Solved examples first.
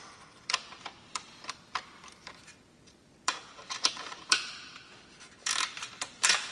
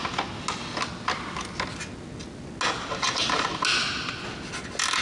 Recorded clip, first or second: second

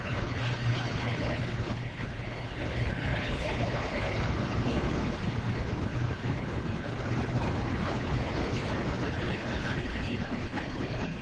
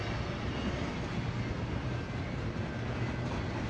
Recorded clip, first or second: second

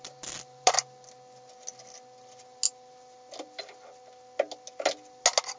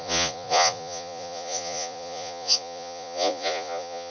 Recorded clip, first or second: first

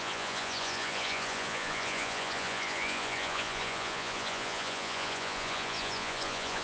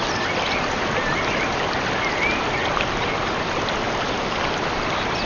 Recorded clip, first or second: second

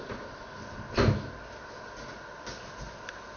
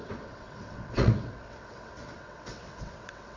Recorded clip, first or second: first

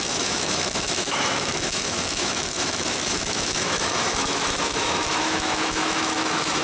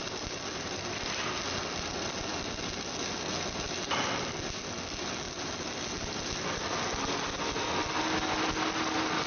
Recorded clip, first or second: second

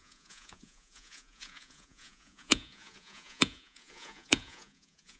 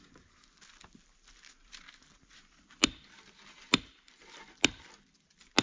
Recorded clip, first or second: second